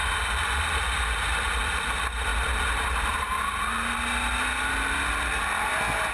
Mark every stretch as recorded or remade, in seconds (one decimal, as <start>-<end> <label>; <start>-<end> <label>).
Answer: 0.0-6.1 recorded